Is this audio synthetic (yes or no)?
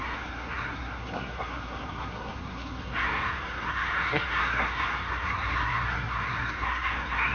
yes